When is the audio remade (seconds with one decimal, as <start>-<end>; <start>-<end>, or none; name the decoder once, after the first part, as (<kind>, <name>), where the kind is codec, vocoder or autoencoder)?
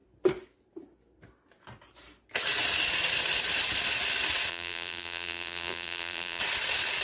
4.5-6.4 (vocoder, BigVGAN v2)